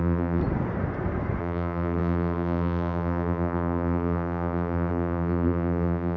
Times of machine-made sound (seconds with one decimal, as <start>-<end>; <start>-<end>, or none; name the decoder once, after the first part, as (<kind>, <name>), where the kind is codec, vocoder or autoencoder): 0.0-0.4 (vocoder, BigVGAN v2); 1.4-6.2

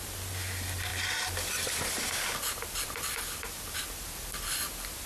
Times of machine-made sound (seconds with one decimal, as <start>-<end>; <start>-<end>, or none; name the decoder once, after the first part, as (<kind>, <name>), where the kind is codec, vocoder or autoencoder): 0.9-3.8 (vocoder, BigVGAN v2)